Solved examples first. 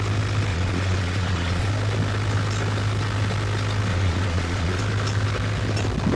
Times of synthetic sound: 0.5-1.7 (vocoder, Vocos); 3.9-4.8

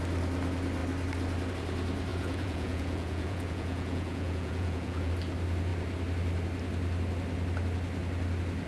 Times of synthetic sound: 2.1-5.1 (vocoder, Vocos)

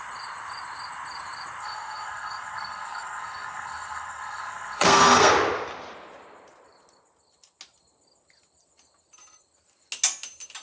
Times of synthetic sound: 1.6-5.3 (codec, SNAC)

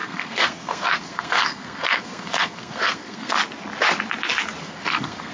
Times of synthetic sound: 0.0-3.4 (codec, SNAC); 4.6-5.3

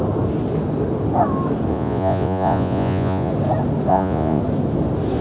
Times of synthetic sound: 1.7-3.3 (vocoder, Vocos); 3.9-4.4

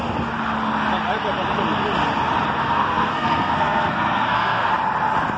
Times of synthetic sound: 2.6-4.7 (codec, SNAC)

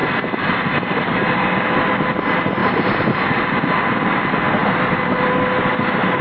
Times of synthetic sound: 2.6-3.7 (vocoder, BigVGAN v2)